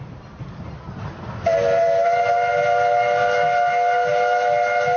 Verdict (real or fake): real